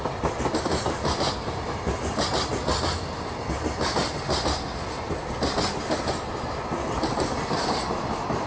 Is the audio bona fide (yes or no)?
yes